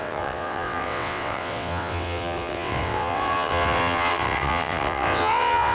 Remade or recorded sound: remade